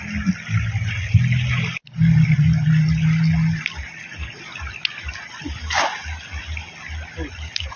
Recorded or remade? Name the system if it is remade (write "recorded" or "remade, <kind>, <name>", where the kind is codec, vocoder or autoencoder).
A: recorded